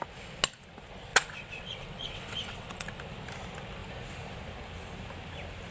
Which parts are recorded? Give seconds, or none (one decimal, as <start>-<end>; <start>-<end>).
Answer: 0.0-1.1; 3.0-5.7